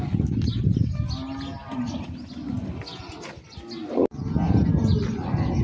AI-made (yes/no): no